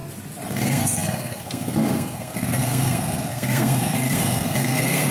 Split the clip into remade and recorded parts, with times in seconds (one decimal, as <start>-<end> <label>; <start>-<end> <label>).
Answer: 0.0-0.5 recorded; 0.5-5.1 remade